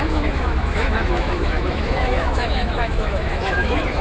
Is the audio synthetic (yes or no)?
yes